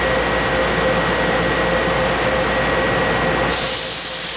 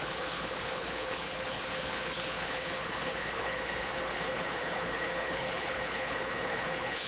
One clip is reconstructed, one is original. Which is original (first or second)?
first